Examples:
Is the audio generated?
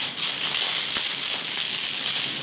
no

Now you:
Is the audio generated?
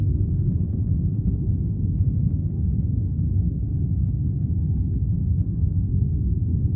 yes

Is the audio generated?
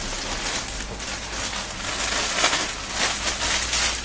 no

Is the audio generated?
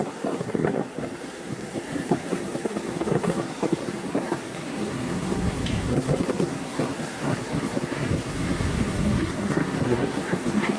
yes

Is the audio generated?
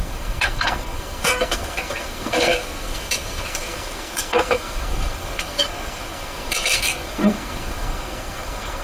yes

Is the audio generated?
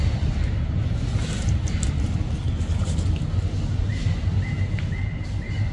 no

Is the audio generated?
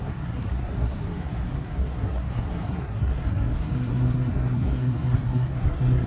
yes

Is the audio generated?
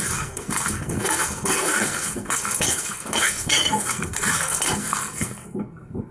yes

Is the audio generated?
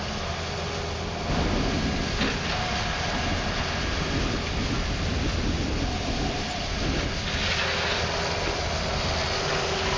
no